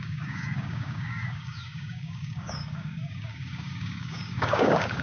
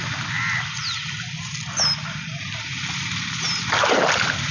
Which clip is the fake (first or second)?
first